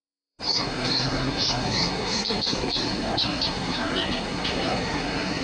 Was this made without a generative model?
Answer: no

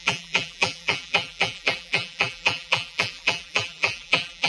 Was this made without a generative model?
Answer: no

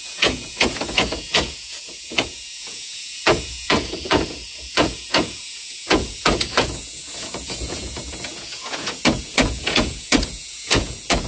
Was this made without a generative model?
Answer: no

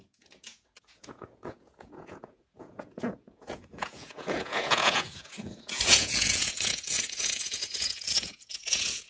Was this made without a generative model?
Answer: no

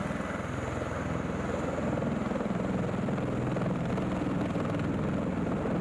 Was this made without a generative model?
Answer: yes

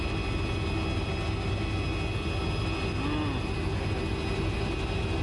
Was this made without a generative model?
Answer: yes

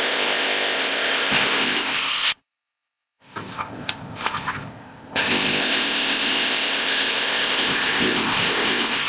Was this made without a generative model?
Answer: no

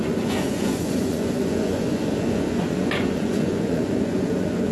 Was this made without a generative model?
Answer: no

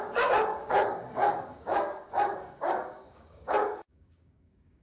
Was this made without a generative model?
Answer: no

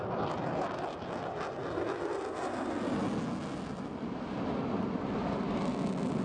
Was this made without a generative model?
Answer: yes